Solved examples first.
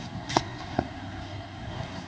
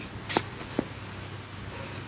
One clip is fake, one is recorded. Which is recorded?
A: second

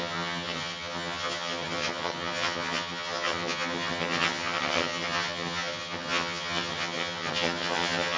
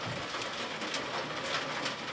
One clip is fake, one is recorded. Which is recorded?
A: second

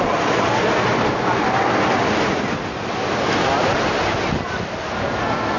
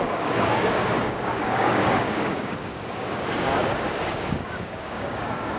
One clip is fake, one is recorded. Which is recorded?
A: first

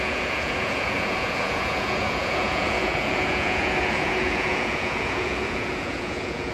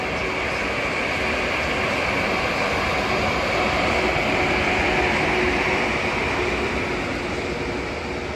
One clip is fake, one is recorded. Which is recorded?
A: second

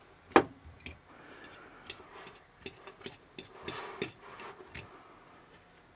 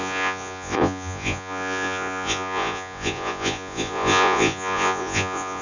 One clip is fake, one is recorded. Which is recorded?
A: first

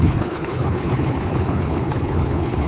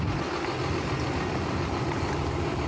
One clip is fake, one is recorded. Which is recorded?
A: second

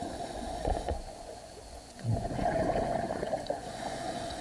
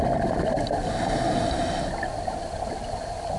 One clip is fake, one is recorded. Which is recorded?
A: second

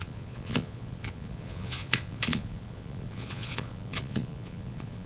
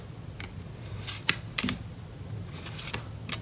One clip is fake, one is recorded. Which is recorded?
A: second